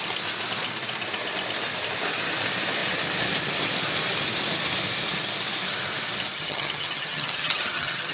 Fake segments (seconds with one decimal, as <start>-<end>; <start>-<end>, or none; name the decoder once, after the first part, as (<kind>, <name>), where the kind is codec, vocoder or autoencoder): 6.3-8.1 (vocoder, HiFi-GAN)